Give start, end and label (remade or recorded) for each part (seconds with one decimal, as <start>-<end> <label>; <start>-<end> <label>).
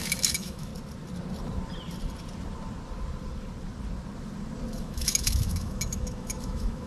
0.0-0.7 remade; 0.7-4.8 recorded; 4.8-6.9 remade